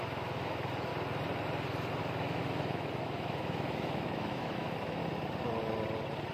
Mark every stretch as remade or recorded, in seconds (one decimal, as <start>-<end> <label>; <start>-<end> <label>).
0.0-0.9 remade; 0.9-2.0 recorded; 2.0-5.0 remade; 5.0-6.3 recorded